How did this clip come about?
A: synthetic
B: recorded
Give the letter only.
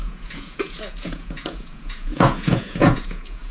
A